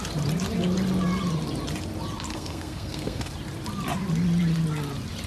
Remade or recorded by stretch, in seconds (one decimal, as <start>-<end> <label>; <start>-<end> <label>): 0.0-2.3 recorded; 2.3-3.3 remade; 3.3-5.3 recorded